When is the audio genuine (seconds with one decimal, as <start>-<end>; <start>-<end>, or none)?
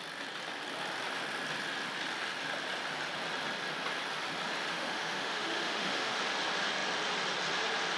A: 0.0-4.7; 6.2-8.0